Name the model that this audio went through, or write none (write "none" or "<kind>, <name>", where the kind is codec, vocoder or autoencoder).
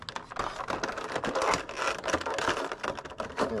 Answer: none